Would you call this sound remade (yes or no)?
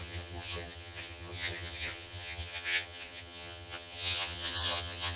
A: yes